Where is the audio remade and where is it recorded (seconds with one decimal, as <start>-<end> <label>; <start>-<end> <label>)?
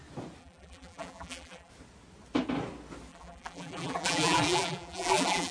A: 0.0-0.4 recorded; 0.4-1.7 remade; 1.7-3.1 recorded; 3.1-5.5 remade